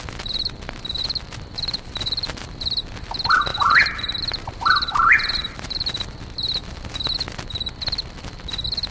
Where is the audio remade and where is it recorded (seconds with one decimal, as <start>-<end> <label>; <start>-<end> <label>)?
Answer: 0.0-3.5 recorded; 3.5-5.9 remade; 5.9-8.9 recorded